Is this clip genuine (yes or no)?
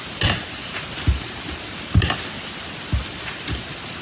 yes